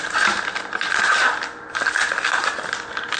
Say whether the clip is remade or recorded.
recorded